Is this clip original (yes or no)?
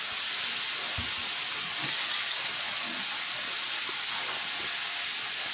yes